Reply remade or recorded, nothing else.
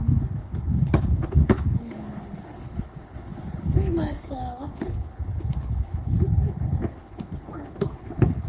remade